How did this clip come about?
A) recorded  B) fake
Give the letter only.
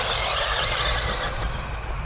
A